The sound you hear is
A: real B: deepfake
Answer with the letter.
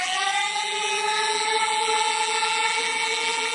B